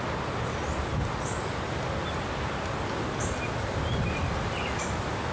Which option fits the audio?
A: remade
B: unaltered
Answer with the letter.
B